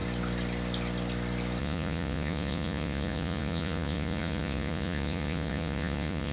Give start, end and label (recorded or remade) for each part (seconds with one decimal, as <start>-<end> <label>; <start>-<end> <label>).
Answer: 0.0-1.6 recorded; 1.6-6.3 remade